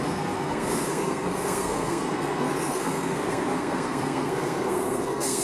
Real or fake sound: fake